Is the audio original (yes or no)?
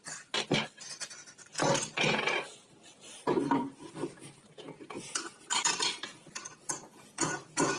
yes